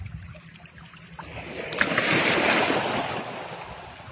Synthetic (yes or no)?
no